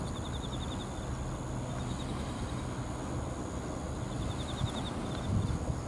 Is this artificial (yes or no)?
no